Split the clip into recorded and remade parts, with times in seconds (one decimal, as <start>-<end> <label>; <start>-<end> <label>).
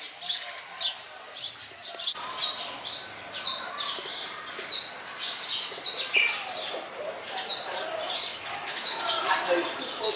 0.0-8.3 recorded; 8.3-9.0 remade; 9.0-10.2 recorded